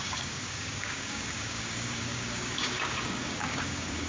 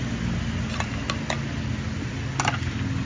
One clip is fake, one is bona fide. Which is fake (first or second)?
first